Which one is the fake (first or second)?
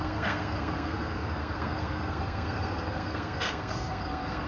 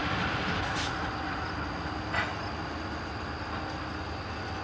first